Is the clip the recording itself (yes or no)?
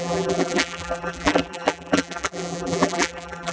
no